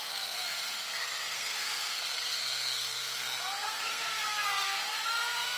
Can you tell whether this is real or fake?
fake